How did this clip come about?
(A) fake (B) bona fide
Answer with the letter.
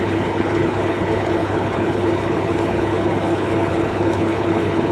A